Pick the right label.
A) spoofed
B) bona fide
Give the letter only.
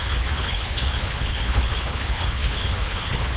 A